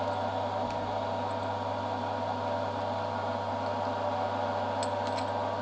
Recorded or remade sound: recorded